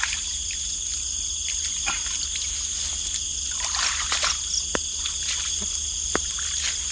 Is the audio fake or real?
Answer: real